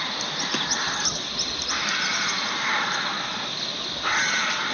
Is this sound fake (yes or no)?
no